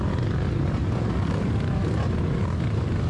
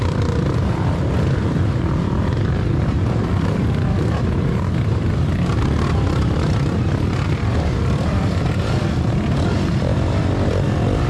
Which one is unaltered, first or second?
first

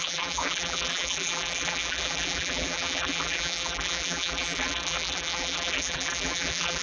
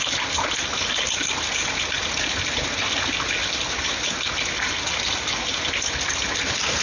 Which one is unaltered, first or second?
second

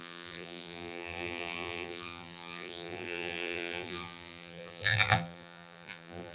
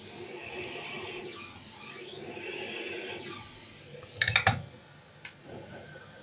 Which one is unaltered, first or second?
second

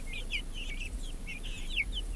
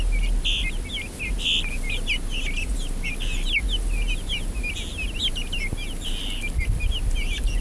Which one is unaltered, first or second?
second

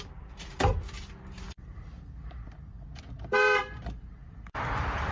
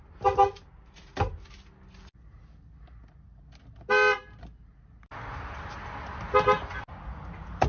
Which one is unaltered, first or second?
second